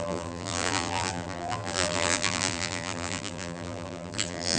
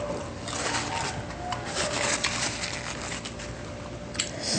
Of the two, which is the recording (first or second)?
second